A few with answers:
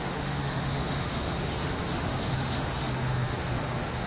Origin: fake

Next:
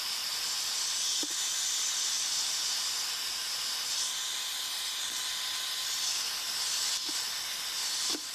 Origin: real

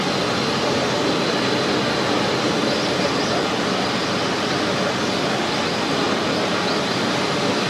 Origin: real